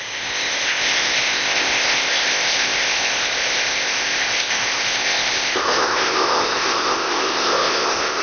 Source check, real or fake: fake